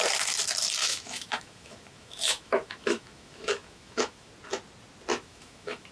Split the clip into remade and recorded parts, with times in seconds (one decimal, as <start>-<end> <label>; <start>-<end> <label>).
0.0-0.8 recorded; 0.8-4.3 remade; 4.3-5.1 recorded; 5.1-5.9 remade